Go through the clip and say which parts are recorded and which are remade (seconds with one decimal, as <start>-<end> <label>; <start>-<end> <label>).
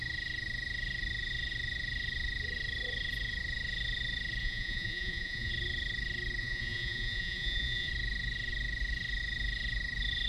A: 0.0-4.4 recorded; 4.4-5.5 remade; 5.5-6.4 recorded; 6.4-7.9 remade; 7.9-10.3 recorded